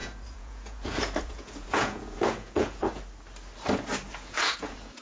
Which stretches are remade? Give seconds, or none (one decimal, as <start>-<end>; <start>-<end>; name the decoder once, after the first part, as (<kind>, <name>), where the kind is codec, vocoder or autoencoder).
0.0-3.0 (vocoder, Vocos); 4.1-5.0